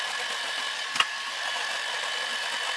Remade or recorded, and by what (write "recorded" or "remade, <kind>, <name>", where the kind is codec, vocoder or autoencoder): recorded